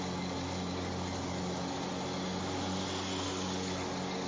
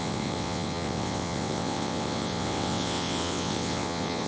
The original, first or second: first